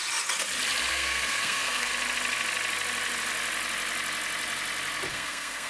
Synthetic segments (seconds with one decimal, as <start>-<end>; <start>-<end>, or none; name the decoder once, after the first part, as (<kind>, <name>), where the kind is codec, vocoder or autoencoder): 0.9-1.9 (codec, SNAC); 5.1-5.7